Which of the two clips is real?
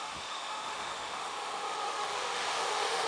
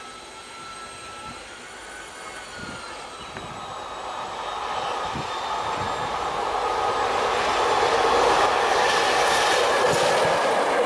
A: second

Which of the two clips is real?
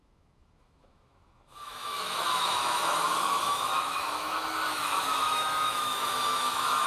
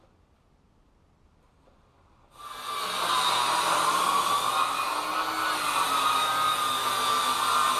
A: second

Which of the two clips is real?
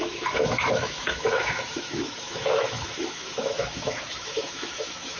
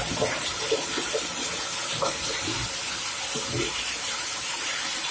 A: second